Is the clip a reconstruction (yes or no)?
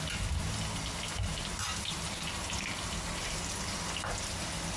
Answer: no